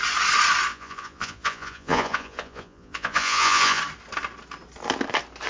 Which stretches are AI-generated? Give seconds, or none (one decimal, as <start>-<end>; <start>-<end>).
0.7-3.8